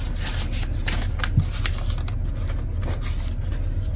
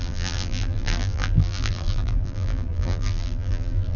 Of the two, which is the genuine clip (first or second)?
first